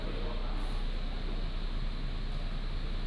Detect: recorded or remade recorded